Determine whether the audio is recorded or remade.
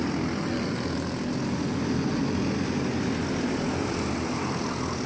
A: recorded